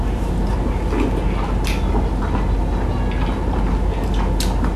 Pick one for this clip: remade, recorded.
recorded